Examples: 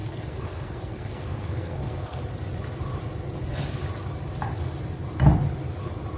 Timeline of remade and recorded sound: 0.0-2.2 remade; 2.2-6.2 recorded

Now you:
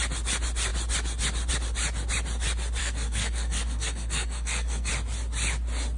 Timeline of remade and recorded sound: 0.0-2.8 recorded; 2.8-4.9 remade; 4.9-6.0 recorded

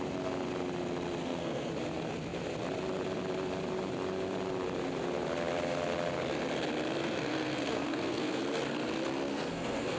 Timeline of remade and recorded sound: 0.0-1.2 recorded; 1.2-1.7 remade; 1.7-7.0 recorded; 7.0-8.4 remade; 8.4-9.3 recorded; 9.3-10.0 remade

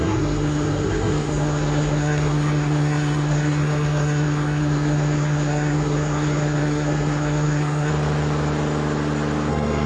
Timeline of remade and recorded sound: 0.0-7.9 remade; 7.9-9.5 recorded; 9.5-9.9 remade

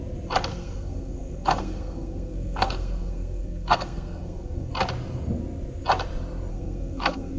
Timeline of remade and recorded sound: 0.0-0.5 recorded; 0.5-4.7 remade; 4.7-6.5 recorded; 6.5-7.4 remade

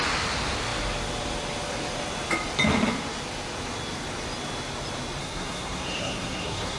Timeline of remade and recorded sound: 0.0-5.2 recorded; 5.2-6.8 remade